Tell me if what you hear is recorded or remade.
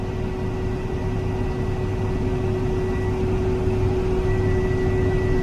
recorded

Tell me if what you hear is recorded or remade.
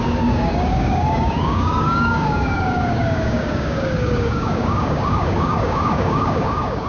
remade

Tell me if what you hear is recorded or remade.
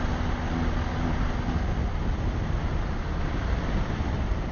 recorded